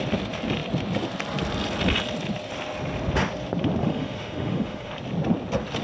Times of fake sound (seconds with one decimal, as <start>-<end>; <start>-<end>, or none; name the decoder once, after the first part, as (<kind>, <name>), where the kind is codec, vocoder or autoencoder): 3.8-4.9 (autoencoder, DAC-VAE)